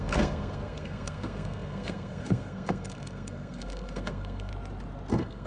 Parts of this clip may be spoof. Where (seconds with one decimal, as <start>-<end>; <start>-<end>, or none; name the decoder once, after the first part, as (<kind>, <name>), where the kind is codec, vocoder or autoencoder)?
0.0-4.5 (codec, SNAC); 5.1-5.5